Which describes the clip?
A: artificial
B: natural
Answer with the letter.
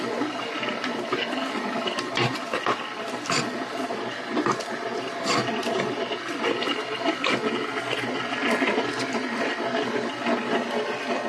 B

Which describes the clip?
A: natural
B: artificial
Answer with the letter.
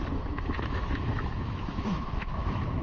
B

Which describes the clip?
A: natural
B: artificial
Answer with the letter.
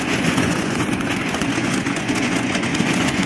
B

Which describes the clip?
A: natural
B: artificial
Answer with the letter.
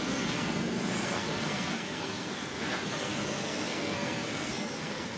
B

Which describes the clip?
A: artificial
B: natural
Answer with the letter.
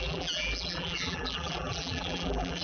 A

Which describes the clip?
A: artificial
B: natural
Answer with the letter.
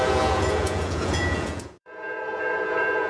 A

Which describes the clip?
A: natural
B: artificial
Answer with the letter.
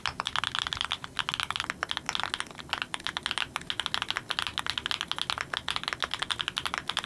A